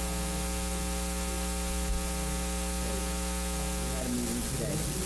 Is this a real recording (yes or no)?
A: yes